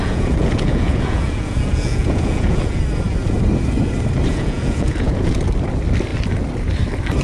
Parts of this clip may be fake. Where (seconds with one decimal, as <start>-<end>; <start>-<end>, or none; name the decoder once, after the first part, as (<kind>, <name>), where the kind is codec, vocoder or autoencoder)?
0.0-2.8 (vocoder, Vocos); 4.3-5.4